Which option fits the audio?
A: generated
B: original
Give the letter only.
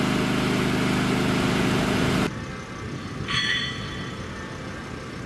B